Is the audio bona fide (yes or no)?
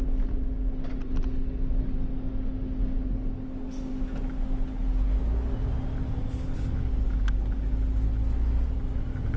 yes